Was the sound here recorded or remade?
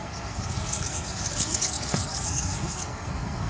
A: remade